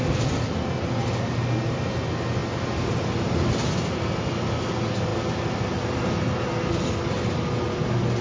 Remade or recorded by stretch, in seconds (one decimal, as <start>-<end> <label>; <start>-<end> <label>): 0.0-8.2 recorded